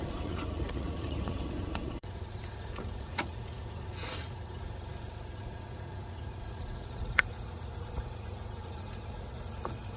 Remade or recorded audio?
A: remade